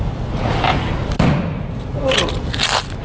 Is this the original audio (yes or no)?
yes